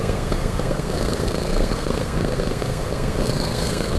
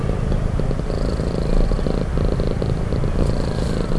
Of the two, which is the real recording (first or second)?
second